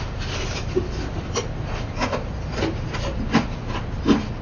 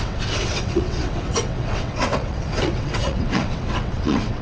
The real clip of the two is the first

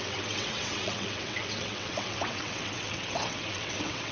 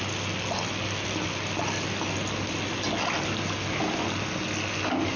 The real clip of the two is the second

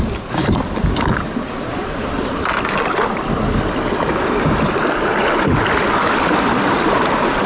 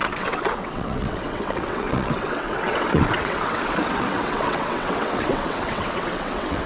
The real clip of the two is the first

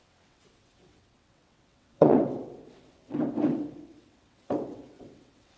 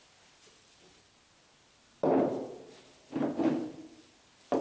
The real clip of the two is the second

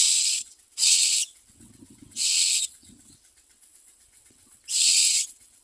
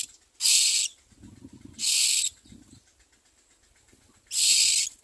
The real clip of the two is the second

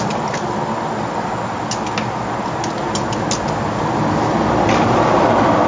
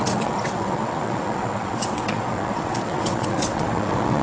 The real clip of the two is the first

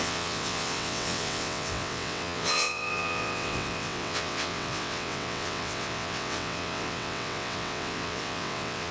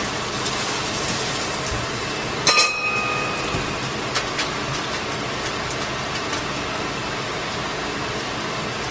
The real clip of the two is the second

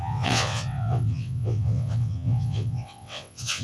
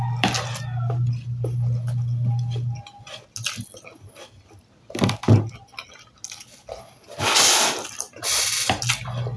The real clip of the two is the second